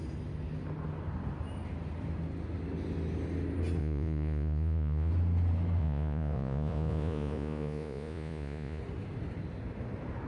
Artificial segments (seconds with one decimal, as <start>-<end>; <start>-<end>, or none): 3.8-5.1; 5.8-8.8